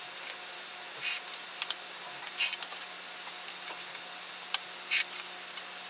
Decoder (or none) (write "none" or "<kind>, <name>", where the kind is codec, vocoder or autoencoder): none